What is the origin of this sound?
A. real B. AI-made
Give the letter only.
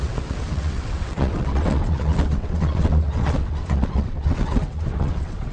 B